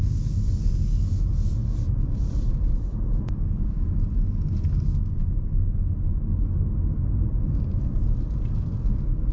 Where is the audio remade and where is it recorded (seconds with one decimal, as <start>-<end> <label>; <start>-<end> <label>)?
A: 0.0-9.3 recorded